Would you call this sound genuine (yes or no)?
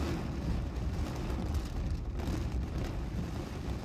yes